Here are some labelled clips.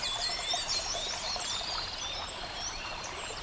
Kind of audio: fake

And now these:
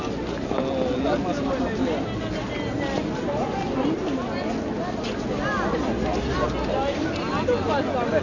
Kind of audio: real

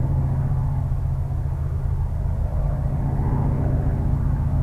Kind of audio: real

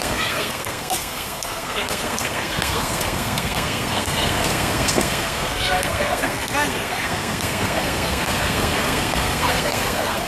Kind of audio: fake